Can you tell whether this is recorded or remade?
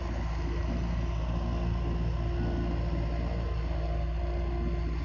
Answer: recorded